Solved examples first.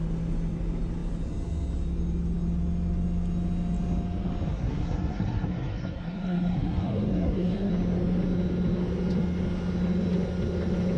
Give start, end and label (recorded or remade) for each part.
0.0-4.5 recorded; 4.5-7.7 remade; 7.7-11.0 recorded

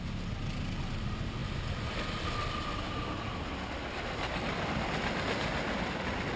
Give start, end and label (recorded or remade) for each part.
0.0-6.4 recorded

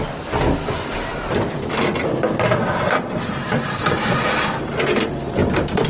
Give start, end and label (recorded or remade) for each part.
0.0-1.1 recorded; 1.1-4.6 remade; 4.6-5.9 recorded